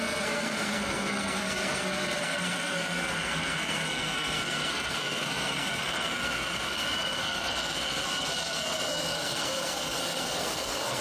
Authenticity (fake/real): fake